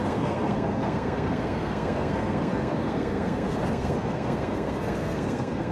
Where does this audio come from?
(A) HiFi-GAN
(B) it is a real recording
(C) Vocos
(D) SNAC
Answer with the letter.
D